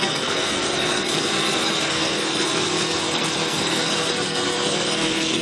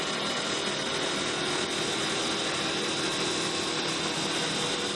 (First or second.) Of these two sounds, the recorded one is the second